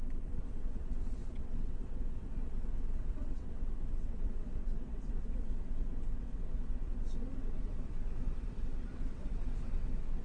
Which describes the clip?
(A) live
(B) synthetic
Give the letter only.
B